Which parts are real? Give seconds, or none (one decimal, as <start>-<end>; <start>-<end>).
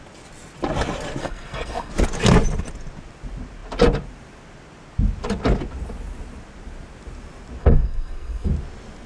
0.0-1.2; 1.9-7.6; 8.5-9.1